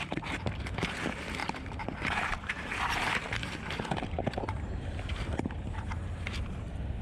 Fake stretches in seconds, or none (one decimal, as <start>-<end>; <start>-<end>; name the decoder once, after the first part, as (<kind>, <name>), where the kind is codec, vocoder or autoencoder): 0.0-7.0 (vocoder, BigVGAN v2)